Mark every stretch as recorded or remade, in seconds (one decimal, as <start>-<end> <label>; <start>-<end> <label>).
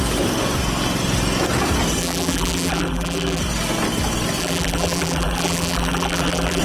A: 0.0-2.0 recorded; 2.0-3.4 remade; 3.4-4.4 recorded; 4.4-6.6 remade